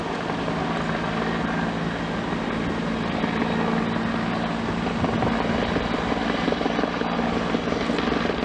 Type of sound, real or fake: real